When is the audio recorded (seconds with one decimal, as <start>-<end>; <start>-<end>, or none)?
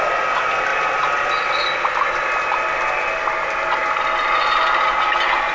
0.0-5.5